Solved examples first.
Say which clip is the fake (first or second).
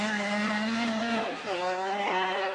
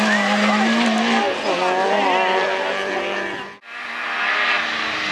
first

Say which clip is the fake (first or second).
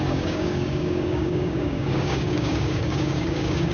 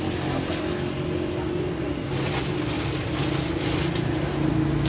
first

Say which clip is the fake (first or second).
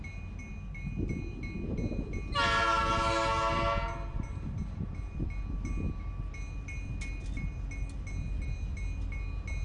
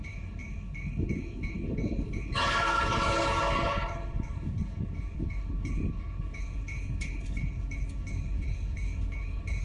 second